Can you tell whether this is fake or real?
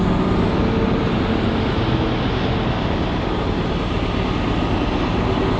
real